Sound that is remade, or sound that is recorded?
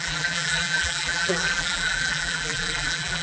remade